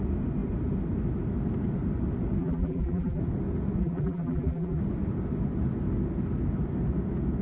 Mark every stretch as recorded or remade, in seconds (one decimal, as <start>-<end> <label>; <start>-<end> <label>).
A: 0.0-2.4 recorded; 2.4-3.2 remade; 3.2-3.8 recorded; 3.8-4.8 remade; 4.8-7.4 recorded